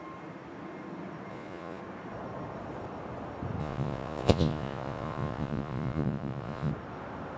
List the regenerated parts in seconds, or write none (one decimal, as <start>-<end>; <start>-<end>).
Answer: 1.3-1.8; 3.6-6.7